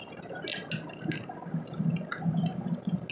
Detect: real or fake real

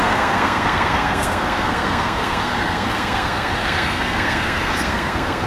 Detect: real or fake fake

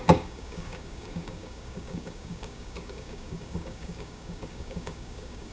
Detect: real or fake fake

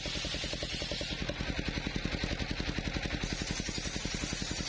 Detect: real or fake real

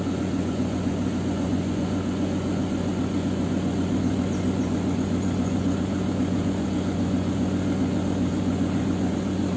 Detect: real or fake fake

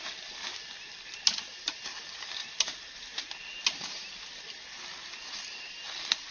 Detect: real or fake real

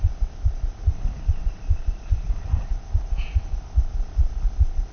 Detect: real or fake real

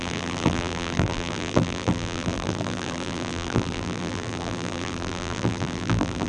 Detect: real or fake fake